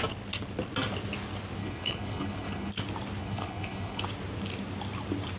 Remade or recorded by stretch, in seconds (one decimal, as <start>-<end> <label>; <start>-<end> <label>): 0.0-1.6 recorded; 1.6-2.7 remade; 2.7-3.2 recorded; 3.2-4.0 remade; 4.0-5.4 recorded